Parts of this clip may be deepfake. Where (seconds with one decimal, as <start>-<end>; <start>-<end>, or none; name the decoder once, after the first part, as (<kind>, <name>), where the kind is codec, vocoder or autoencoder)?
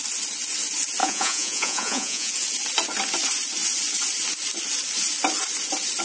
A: 1.0-2.3 (vocoder, Vocos)